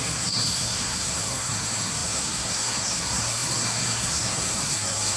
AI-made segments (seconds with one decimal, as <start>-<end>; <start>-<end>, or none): 0.0-5.2